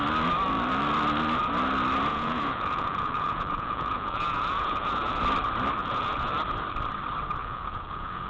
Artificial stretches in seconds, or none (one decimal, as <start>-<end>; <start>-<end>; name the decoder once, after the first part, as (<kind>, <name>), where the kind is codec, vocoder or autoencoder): 2.1-5.2 (vocoder, Vocos); 5.8-6.3; 7.4-8.3

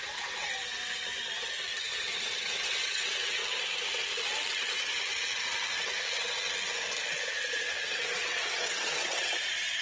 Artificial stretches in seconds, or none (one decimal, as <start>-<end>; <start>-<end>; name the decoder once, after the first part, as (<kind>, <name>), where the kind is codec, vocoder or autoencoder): 0.0-0.8 (vocoder, WaveNeXt); 1.8-3.4; 8.0-9.8

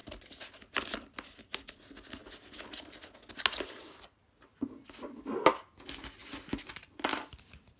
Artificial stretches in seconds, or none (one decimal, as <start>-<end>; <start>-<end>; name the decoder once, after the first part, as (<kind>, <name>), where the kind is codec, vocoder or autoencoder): none

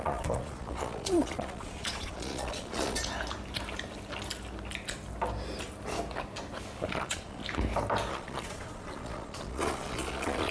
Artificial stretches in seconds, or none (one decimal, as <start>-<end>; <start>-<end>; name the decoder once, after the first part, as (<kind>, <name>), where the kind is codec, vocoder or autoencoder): 0.0-3.0 (vocoder, Vocos); 6.9-7.4; 8.1-10.5

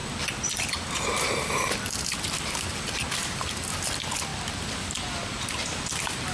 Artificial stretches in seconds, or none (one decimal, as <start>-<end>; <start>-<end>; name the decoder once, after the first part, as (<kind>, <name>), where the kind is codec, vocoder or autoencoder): 0.0-3.8 (vocoder, BigVGAN v2); 4.3-6.3

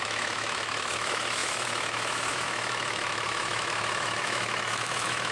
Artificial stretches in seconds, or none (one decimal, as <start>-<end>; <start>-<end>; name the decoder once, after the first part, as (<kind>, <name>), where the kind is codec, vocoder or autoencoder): 0.0-5.3 (autoencoder, DAC-VAE)